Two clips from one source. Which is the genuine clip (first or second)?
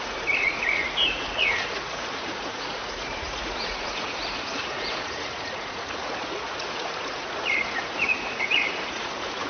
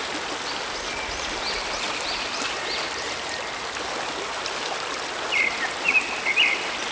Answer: second